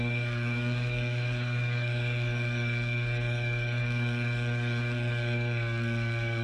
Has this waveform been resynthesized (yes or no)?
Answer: yes